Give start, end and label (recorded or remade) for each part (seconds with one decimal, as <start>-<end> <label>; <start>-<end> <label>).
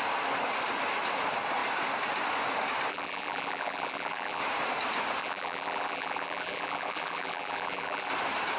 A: 0.0-2.9 recorded; 2.9-4.4 remade; 4.4-5.2 recorded; 5.2-8.1 remade; 8.1-8.6 recorded